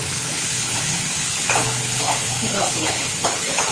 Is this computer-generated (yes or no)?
yes